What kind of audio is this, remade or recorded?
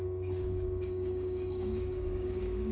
remade